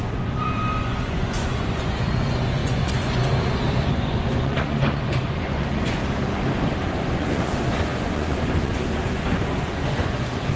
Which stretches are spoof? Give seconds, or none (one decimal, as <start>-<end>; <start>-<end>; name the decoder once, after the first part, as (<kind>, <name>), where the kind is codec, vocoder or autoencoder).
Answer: 0.0-6.0 (vocoder, Vocos); 6.9-10.6